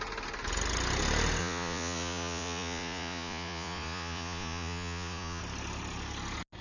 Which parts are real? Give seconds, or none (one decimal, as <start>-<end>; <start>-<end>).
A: 0.0-1.4; 5.4-6.6